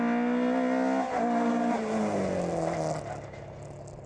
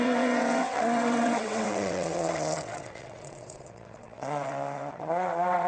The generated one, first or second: second